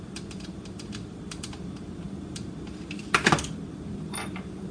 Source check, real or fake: fake